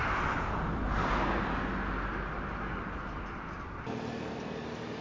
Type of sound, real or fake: real